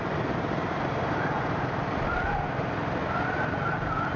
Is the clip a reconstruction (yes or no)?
no